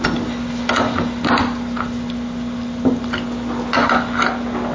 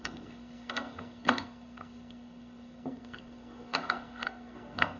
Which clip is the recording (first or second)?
first